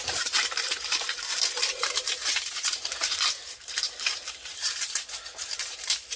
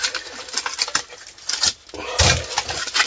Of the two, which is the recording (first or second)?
second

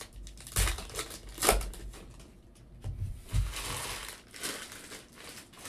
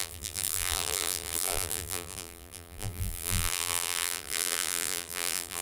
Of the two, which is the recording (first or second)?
first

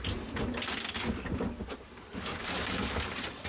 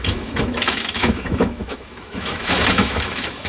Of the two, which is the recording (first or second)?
first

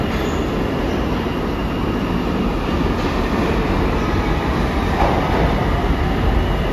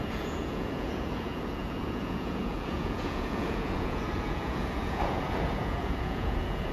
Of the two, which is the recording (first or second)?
first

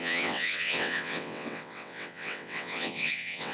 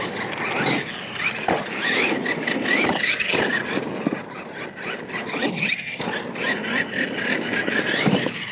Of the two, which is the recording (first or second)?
second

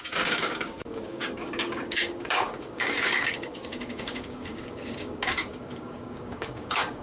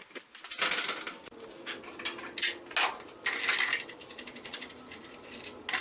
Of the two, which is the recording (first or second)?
second